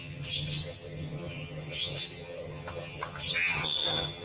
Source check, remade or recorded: remade